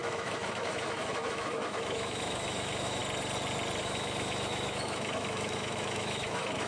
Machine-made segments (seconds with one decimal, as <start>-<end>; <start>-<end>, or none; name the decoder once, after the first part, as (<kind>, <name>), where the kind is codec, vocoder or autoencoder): 0.0-3.0 (autoencoder, DAC-VAE); 3.8-6.7